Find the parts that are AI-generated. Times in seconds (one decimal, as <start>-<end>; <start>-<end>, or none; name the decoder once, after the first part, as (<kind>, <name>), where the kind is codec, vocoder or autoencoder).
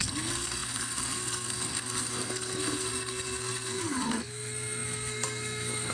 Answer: 0.0-5.9 (codec, SNAC)